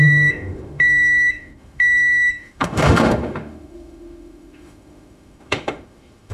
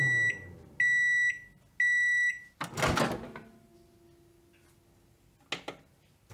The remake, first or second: first